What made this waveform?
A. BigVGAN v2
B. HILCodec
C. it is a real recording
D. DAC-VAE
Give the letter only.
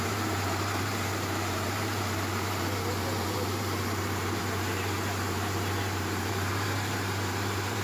A